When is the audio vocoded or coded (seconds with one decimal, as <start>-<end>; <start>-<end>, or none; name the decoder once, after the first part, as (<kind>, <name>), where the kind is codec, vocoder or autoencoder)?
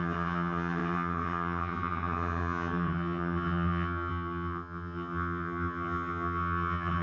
0.0-7.0 (vocoder, HiFi-GAN)